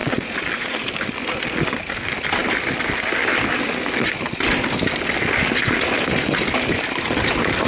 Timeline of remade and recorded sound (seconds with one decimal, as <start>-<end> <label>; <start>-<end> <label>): 0.0-0.8 remade; 0.8-7.7 recorded